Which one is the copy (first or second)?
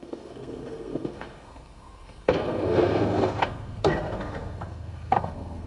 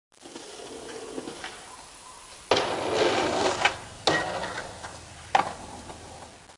first